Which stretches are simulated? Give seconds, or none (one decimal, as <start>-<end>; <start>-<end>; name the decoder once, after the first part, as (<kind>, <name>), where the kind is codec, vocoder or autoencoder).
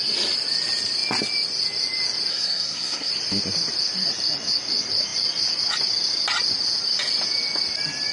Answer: 2.3-3.1 (codec, SNAC)